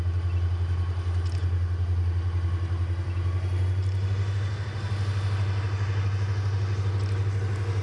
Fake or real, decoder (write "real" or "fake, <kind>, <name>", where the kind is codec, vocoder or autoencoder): real